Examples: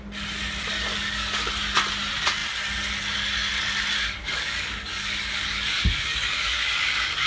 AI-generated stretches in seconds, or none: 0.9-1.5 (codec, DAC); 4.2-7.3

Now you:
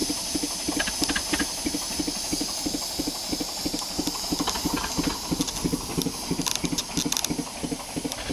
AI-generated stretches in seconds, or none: none

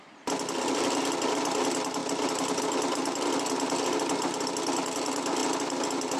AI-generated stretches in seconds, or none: none